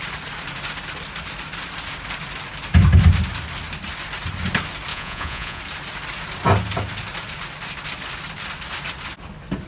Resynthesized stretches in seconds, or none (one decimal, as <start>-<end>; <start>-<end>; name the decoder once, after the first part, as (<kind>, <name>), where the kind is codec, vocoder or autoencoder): 4.9-5.6 (vocoder, Vocos)